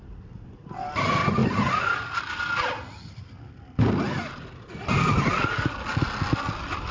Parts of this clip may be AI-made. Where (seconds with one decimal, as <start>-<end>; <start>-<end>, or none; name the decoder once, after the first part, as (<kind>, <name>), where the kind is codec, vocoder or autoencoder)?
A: none